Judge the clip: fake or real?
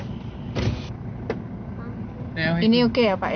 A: real